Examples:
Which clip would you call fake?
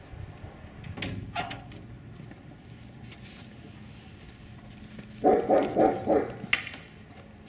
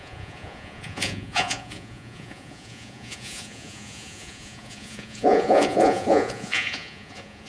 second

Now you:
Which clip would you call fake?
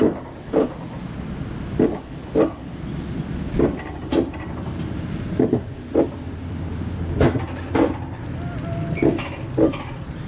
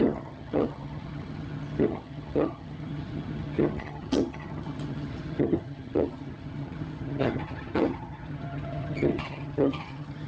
second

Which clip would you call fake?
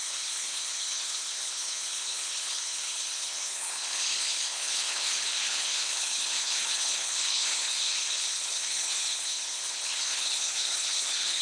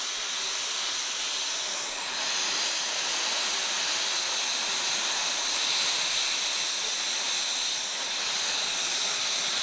first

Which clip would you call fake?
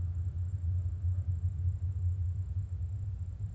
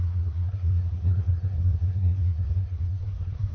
second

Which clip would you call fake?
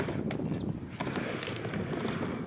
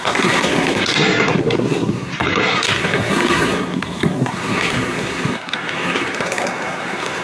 second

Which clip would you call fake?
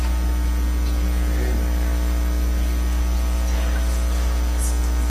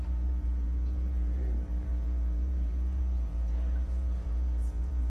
second